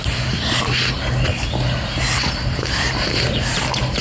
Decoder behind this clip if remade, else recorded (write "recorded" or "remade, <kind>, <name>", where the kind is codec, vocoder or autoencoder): recorded